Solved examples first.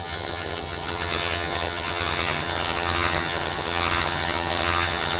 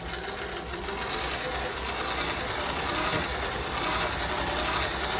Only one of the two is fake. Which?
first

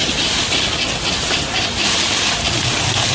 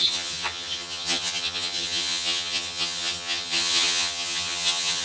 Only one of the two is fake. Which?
second